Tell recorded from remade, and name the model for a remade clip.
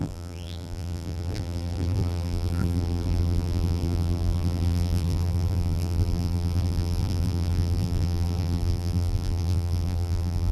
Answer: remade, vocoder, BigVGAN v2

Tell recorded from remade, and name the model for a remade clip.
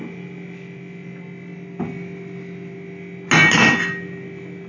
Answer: recorded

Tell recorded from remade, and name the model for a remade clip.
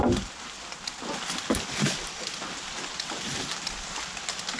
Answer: recorded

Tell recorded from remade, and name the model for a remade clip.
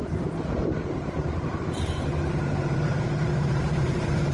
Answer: remade, vocoder, BigVGAN v2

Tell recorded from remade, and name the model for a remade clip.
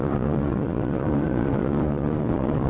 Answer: remade, vocoder, Vocos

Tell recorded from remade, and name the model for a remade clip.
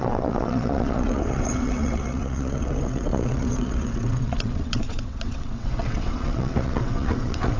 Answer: remade, vocoder, WaveNeXt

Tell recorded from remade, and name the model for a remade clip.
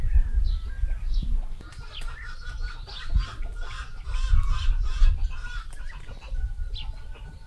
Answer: recorded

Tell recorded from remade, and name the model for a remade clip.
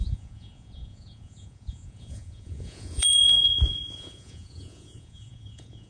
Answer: remade, vocoder, Vocos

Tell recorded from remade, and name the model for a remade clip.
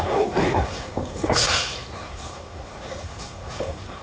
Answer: remade, codec, SNAC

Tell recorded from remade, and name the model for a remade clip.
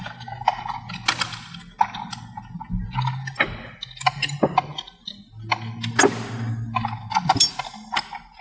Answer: recorded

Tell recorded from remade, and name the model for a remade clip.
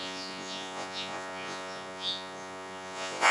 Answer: remade, vocoder, Vocos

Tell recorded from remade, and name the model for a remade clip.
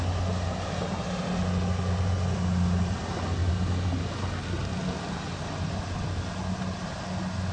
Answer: recorded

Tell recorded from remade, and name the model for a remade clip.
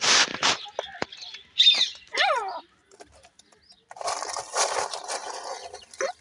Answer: recorded